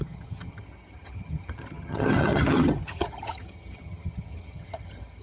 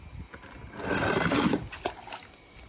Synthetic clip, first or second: first